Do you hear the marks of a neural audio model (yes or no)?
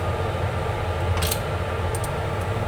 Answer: no